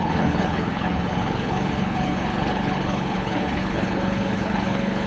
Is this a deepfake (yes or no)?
yes